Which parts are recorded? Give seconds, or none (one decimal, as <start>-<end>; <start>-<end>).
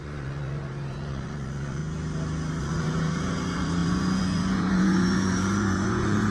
1.8-2.6